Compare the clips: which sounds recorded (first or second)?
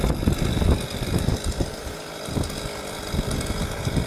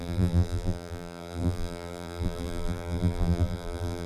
first